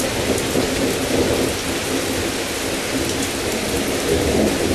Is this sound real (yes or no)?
yes